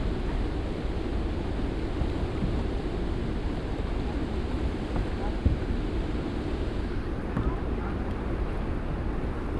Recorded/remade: recorded